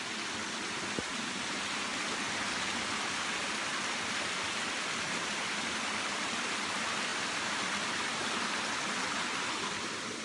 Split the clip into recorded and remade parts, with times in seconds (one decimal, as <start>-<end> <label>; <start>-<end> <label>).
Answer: 0.0-7.1 recorded; 7.1-8.6 remade; 8.6-10.2 recorded

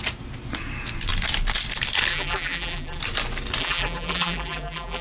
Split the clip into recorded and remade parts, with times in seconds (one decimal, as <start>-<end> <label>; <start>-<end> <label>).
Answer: 0.0-2.1 recorded; 2.1-3.0 remade; 3.0-3.6 recorded; 3.6-5.0 remade

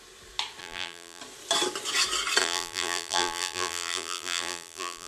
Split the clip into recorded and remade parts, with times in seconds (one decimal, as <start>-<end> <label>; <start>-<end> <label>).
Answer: 0.0-0.6 recorded; 0.6-1.2 remade; 1.2-2.4 recorded; 2.4-5.1 remade

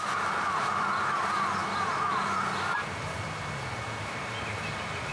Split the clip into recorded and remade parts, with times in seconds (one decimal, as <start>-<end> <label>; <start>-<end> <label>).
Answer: 0.0-5.1 recorded

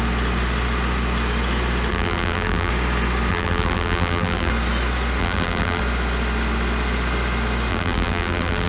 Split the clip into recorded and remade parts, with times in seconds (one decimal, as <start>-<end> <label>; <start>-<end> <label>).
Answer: 0.0-1.9 recorded; 1.9-2.7 remade; 2.7-3.3 recorded; 3.3-4.5 remade; 4.5-5.2 recorded; 5.2-5.8 remade; 5.8-7.7 recorded; 7.7-8.7 remade